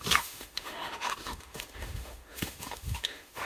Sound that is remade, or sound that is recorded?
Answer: remade